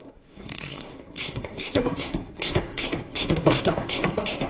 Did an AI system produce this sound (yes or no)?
yes